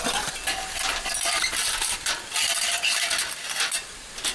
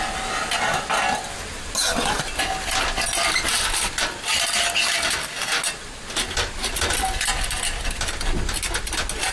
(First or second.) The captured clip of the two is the second